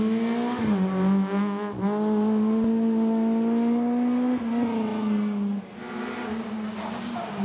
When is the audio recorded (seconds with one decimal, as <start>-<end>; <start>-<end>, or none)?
0.0-7.4